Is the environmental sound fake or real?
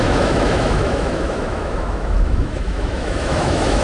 fake